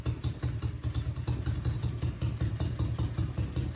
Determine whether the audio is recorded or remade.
remade